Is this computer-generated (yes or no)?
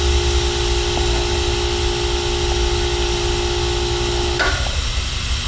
no